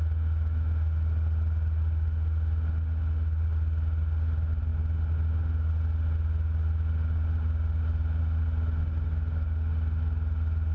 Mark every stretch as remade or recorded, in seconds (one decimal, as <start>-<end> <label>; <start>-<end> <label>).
0.0-10.7 recorded